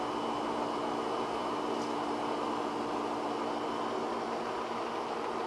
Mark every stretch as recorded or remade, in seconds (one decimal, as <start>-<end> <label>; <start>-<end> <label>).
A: 0.0-5.5 recorded